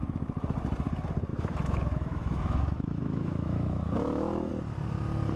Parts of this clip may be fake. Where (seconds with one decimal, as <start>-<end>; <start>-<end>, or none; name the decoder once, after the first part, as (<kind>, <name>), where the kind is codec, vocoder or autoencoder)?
1.3-4.5 (autoencoder, DAC-VAE)